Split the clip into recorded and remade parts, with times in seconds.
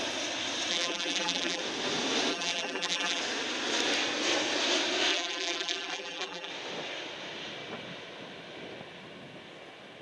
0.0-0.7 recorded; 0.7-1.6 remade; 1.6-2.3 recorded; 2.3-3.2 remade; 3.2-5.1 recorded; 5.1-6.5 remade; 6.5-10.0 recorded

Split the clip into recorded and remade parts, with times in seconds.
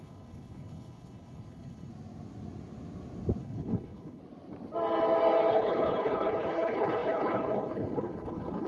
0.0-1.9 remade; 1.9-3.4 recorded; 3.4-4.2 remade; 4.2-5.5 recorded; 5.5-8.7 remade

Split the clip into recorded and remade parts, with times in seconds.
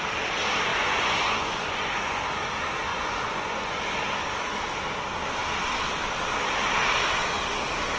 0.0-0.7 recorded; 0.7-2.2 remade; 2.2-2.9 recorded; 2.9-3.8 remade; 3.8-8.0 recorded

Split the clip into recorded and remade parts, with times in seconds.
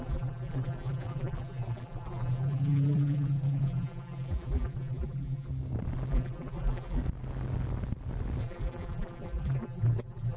0.0-5.5 remade; 5.5-6.1 recorded; 6.1-7.0 remade; 7.0-8.4 recorded; 8.4-10.4 remade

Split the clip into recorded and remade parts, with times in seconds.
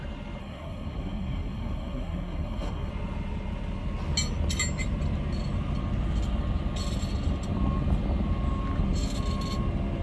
0.0-0.4 recorded; 0.4-2.9 remade; 2.9-10.0 recorded